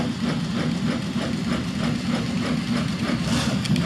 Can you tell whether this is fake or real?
real